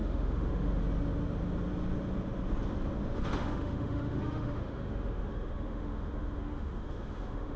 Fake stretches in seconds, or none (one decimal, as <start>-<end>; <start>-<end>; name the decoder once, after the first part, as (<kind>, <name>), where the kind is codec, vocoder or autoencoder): 0.0-0.8 (autoencoder, DAC-VAE); 3.0-7.6